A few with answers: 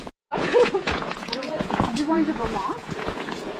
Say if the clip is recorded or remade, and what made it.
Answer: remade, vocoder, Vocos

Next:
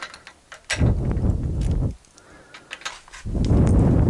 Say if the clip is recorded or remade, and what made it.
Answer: recorded